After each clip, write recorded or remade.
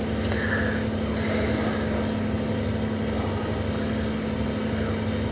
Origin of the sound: recorded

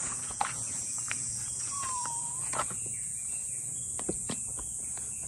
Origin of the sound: remade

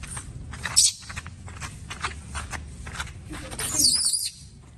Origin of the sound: recorded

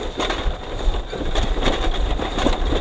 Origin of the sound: recorded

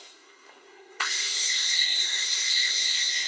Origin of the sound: remade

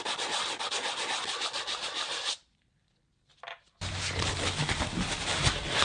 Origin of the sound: recorded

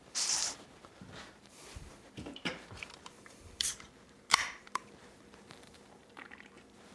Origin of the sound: remade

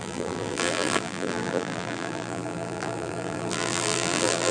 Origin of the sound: remade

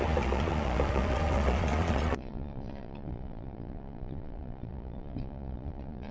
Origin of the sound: remade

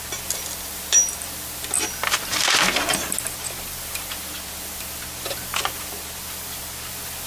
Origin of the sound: recorded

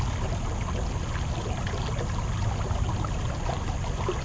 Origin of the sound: recorded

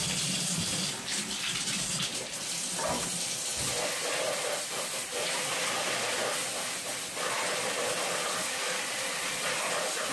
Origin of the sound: recorded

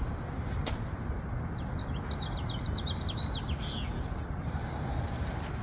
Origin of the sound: recorded